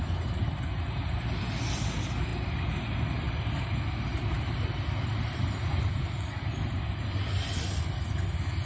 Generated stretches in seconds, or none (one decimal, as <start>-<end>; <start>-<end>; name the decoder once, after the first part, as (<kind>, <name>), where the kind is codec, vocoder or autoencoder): none